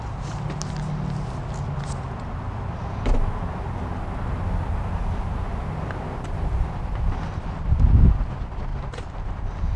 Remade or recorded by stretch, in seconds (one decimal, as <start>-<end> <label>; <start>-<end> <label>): 0.0-8.7 recorded; 8.7-9.8 remade